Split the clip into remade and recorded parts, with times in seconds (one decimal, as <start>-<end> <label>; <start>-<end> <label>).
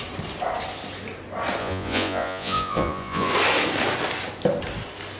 0.0-1.6 recorded; 1.6-3.3 remade; 3.3-5.2 recorded